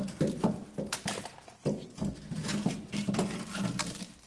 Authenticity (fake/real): real